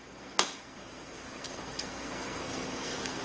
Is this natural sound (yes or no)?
no